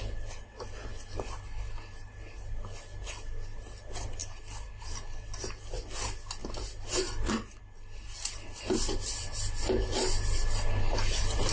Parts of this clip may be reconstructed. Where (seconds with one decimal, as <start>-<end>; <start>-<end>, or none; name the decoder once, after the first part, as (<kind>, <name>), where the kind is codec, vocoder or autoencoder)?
none